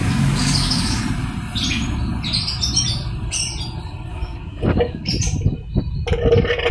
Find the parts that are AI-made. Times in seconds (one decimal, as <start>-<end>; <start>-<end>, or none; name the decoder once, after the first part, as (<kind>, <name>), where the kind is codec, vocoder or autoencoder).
0.0-1.0 (codec, DAC); 4.1-5.1